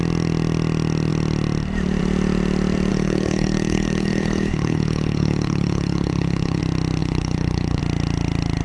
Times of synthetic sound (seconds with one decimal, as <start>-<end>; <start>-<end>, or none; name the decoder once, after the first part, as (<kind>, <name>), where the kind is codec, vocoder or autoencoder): 2.9-6.6 (codec, HILCodec); 7.0-7.8